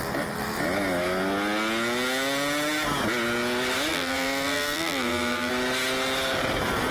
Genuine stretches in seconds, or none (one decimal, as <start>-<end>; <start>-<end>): 0.0-3.9; 5.5-6.9